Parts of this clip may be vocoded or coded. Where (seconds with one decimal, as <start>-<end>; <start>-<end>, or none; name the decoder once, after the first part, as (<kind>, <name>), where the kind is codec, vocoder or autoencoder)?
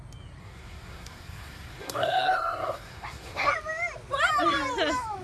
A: 0.4-3.5 (codec, SNAC)